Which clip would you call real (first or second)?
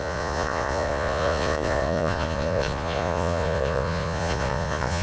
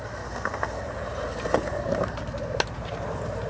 second